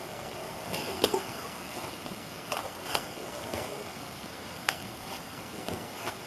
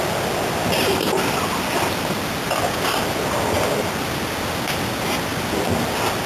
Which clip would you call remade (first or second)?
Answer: first